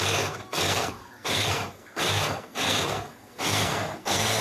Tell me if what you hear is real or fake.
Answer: fake